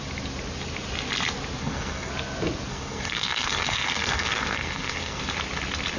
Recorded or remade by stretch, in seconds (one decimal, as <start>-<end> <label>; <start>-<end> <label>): 0.0-1.6 recorded; 1.6-2.1 remade; 2.1-2.7 recorded; 2.7-5.2 remade; 5.2-6.0 recorded